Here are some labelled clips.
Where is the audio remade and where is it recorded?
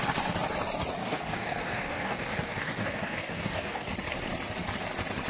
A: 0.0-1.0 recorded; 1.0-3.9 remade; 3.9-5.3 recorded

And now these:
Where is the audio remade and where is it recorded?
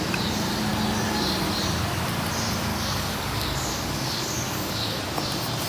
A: 0.0-2.7 recorded; 2.7-5.0 remade; 5.0-5.7 recorded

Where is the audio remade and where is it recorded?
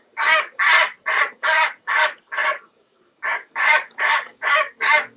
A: 0.0-0.7 remade; 0.7-1.3 recorded; 1.3-5.2 remade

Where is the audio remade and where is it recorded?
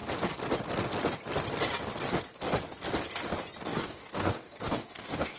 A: 0.0-3.7 recorded; 3.7-5.4 remade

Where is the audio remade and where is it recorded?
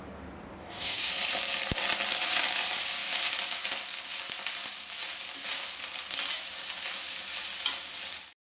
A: 0.0-0.6 recorded; 0.6-1.1 remade; 1.1-8.5 recorded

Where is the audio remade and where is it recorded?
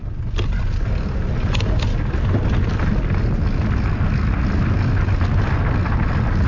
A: 0.0-6.5 recorded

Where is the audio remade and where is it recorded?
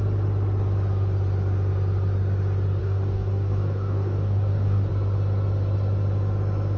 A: 0.0-2.8 recorded; 2.8-4.9 remade; 4.9-6.8 recorded